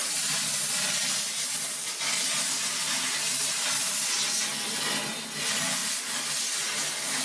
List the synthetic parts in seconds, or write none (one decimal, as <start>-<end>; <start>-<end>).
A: none